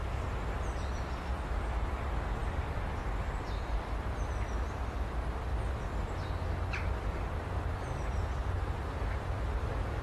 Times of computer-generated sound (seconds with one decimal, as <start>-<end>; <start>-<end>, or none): 1.4-10.0